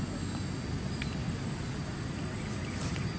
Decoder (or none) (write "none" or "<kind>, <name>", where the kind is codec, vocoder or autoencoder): none